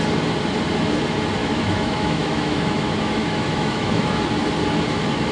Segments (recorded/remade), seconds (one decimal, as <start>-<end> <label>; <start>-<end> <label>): 0.0-1.4 recorded; 1.4-4.2 remade; 4.2-5.3 recorded